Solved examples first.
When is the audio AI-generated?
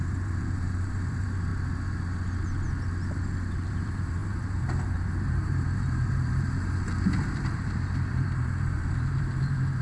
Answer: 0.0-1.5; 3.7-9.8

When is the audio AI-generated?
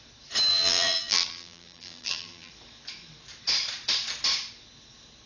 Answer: 0.5-2.5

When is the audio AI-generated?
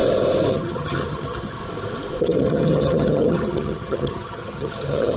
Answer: 0.5-1.6; 2.2-5.2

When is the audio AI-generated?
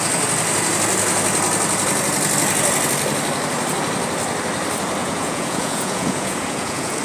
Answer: 5.0-7.0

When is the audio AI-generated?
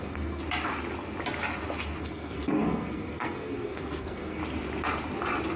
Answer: 0.0-0.4; 2.0-4.4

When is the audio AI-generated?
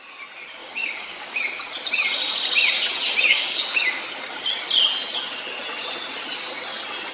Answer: 0.6-1.4; 3.3-4.0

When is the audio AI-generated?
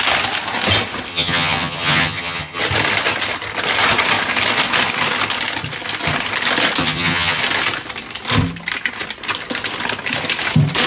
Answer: 1.1-2.6; 6.8-7.4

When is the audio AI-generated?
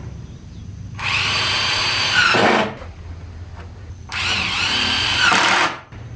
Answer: 0.0-0.6; 1.2-2.4; 4.3-6.2